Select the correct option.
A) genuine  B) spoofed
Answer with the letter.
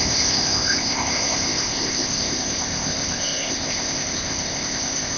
B